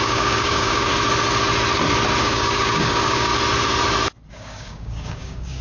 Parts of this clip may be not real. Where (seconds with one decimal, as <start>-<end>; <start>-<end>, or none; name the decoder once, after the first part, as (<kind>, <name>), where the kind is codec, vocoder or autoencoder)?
0.0-0.9 (codec, DAC); 2.2-3.3; 4.3-5.6